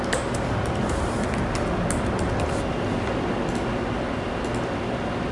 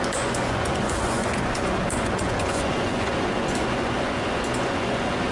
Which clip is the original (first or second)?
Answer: first